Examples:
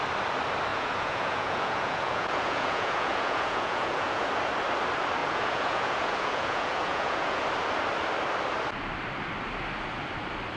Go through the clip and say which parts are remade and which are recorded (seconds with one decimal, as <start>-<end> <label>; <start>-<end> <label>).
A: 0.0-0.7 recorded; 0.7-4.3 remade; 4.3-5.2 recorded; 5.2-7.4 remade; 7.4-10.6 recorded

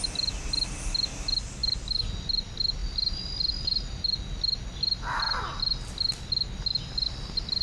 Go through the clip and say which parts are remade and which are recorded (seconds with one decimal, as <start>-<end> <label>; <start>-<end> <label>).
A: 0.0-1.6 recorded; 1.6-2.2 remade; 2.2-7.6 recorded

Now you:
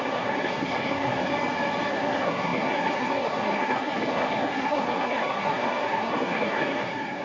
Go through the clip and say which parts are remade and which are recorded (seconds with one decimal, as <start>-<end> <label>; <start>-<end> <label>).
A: 0.0-1.3 remade; 1.3-1.9 recorded; 1.9-7.2 remade

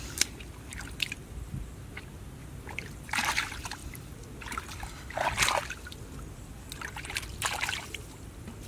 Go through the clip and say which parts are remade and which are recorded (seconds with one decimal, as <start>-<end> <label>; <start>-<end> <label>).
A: 0.0-2.4 recorded; 2.4-3.3 remade; 3.3-8.7 recorded

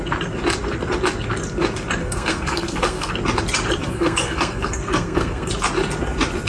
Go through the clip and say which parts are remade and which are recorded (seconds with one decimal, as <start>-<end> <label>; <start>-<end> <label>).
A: 0.0-2.0 recorded; 2.0-3.1 remade; 3.1-3.8 recorded; 3.8-5.5 remade; 5.5-6.5 recorded

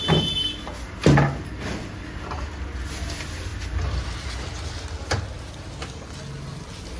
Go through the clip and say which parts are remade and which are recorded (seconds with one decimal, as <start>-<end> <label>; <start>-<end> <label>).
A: 0.0-3.5 recorded; 3.5-4.3 remade; 4.3-7.0 recorded

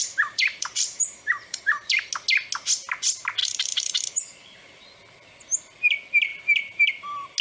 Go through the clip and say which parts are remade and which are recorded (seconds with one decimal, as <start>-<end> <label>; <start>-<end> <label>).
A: 0.0-2.1 remade; 2.1-3.4 recorded; 3.4-4.8 remade; 4.8-6.3 recorded; 6.3-6.9 remade; 6.9-7.4 recorded

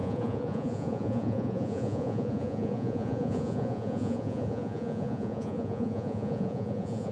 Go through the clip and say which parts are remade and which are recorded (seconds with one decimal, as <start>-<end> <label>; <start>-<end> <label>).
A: 0.0-7.1 remade